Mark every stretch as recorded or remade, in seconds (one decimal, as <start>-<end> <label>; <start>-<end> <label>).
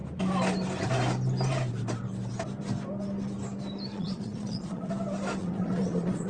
0.0-3.9 recorded; 3.9-4.9 remade; 4.9-5.4 recorded; 5.4-6.3 remade